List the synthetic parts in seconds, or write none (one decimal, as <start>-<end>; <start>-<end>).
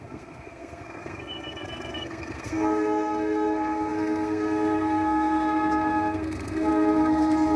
0.0-7.6